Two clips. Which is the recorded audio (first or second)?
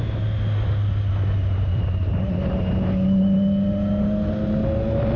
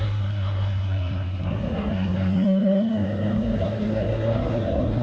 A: first